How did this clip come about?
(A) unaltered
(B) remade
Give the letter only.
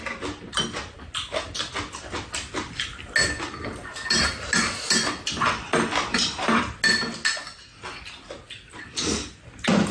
A